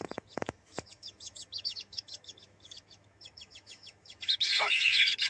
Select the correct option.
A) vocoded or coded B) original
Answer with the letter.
A